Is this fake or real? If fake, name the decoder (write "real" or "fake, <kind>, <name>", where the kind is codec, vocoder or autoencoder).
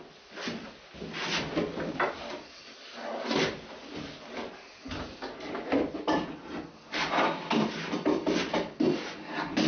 real